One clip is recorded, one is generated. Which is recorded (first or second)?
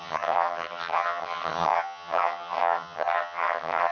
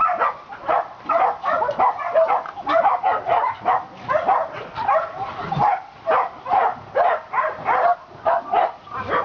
second